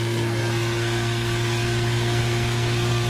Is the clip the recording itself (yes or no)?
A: no